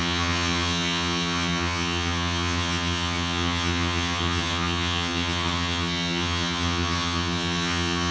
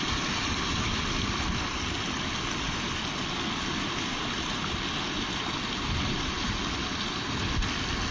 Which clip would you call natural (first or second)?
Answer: second